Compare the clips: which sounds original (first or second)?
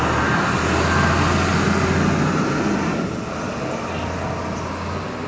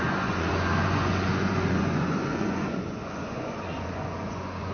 first